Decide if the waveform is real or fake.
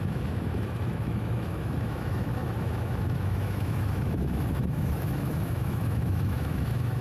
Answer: fake